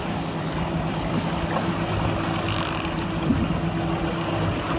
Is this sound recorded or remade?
recorded